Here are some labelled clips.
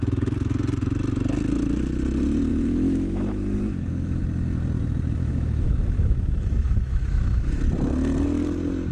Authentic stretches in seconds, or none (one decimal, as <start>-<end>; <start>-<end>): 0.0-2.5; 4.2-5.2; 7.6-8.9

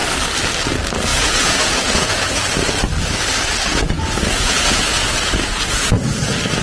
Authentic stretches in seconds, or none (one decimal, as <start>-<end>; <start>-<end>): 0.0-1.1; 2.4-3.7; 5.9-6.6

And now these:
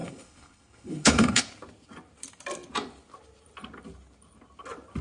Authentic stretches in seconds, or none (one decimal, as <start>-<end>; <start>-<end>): 1.4-5.0

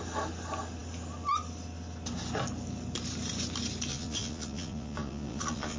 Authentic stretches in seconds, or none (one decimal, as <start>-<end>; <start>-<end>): 0.0-3.9

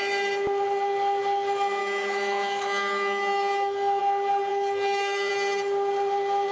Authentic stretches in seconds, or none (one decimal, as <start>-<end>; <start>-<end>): 0.0-1.8; 4.0-4.5; 5.3-6.5

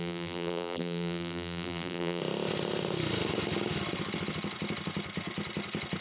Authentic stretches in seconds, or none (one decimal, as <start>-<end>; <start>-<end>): 2.2-6.0